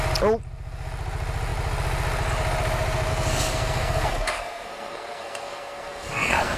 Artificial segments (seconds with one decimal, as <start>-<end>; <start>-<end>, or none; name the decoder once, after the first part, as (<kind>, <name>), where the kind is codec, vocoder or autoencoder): 3.1-6.6 (codec, SNAC)